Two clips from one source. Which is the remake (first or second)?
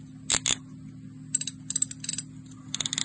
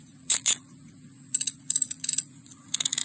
second